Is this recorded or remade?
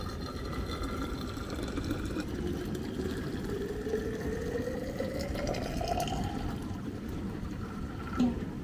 remade